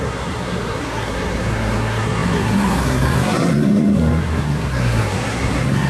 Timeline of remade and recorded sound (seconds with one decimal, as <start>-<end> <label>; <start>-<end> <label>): 0.0-5.9 remade

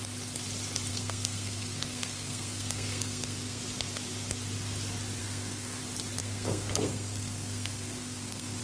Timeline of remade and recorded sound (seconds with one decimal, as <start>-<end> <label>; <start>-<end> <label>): 0.0-0.9 recorded; 0.9-3.6 remade; 3.6-5.2 recorded; 5.2-5.8 remade; 5.8-6.2 recorded; 6.2-8.6 remade

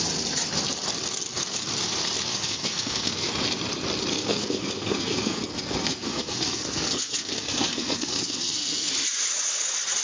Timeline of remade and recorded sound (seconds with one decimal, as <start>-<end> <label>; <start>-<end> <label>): 0.0-2.3 recorded; 2.3-3.3 remade; 3.3-4.1 recorded; 4.1-8.9 remade; 8.9-10.0 recorded

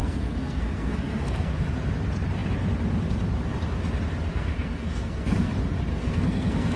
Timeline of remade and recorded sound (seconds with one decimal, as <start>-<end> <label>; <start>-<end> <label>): 0.0-1.6 remade; 1.6-4.3 recorded; 4.3-5.5 remade; 5.5-5.9 recorded; 5.9-6.8 remade

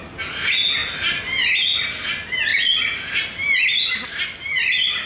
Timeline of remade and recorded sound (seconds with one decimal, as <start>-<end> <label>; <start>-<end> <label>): 0.0-5.1 recorded

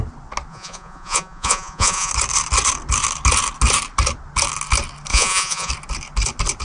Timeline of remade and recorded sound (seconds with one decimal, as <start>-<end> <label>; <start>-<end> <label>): 0.0-0.5 recorded; 0.5-2.1 remade; 2.1-5.1 recorded; 5.1-5.7 remade; 5.7-6.6 recorded